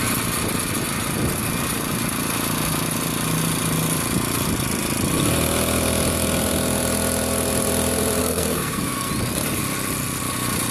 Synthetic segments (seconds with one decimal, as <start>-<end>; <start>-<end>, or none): 8.2-9.1